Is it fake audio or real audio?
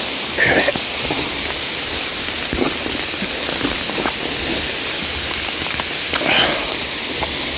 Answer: real